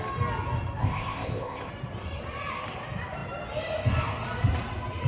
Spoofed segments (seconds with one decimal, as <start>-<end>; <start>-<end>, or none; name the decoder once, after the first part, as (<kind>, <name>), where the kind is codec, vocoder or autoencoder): 0.8-1.7 (codec, ZipCodec)